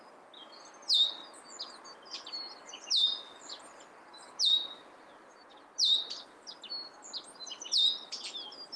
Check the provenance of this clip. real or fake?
real